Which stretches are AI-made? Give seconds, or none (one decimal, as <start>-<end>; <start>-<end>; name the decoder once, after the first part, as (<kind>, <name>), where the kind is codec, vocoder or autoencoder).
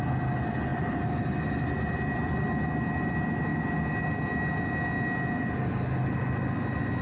0.7-3.1 (vocoder, BigVGAN v2)